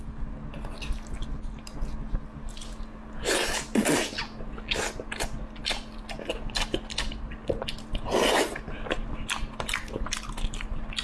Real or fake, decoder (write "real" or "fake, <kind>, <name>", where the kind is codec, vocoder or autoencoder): real